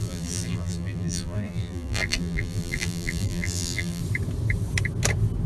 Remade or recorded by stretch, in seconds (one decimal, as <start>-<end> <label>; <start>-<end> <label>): 0.0-4.0 remade; 4.0-5.5 recorded